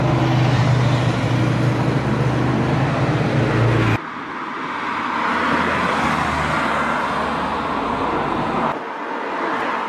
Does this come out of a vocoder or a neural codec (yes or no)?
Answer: no